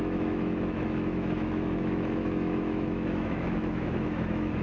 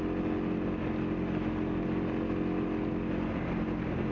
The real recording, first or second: second